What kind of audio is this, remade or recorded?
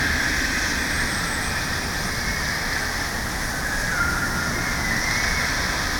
recorded